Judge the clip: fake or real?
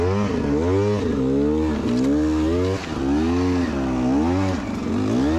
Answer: real